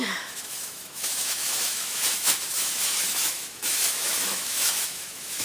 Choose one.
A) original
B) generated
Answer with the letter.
B